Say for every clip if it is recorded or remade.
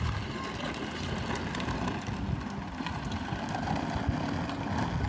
recorded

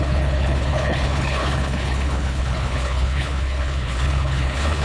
remade